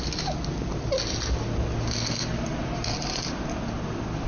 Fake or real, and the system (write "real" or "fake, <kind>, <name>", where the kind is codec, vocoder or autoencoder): real